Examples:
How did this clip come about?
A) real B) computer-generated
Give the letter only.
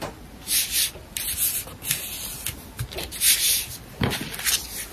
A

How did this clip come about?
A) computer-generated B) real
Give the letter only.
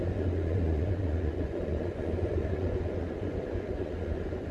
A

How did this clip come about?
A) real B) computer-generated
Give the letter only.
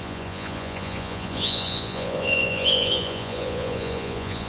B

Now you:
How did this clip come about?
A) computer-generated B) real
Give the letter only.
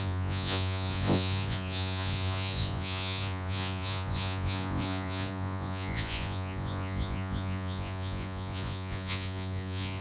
A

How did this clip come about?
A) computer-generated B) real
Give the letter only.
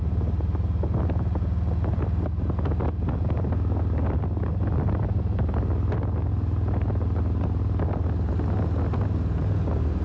B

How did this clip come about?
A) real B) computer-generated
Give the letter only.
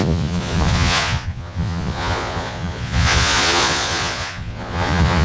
B